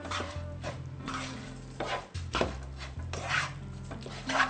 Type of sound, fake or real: fake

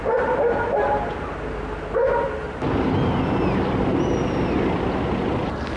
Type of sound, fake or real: real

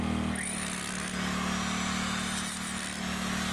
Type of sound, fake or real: real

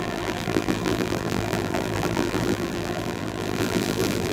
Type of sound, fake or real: fake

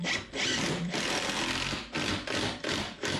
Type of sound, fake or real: fake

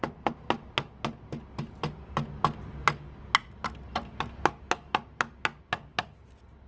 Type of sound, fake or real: real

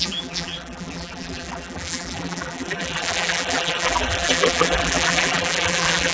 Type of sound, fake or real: fake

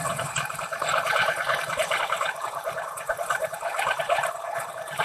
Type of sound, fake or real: fake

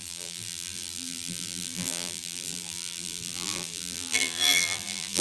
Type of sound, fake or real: fake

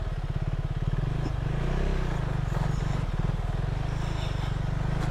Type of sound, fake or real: real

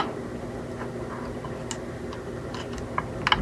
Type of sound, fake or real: real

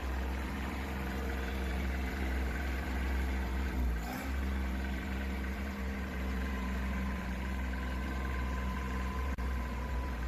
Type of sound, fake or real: fake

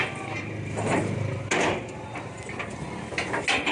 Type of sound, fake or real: real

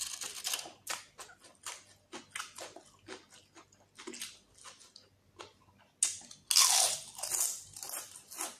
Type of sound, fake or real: real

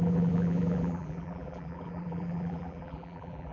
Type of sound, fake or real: fake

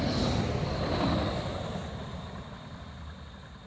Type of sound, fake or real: real